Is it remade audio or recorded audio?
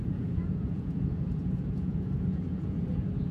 remade